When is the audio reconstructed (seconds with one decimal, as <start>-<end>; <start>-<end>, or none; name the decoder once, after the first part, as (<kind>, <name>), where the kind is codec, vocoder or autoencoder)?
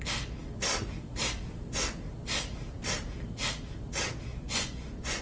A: 4.3-5.2 (vocoder, Vocos)